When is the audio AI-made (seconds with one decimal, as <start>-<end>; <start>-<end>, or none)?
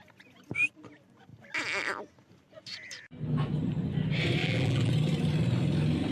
4.4-4.9